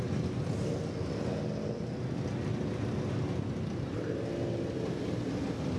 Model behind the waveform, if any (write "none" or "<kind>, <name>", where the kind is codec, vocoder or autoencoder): none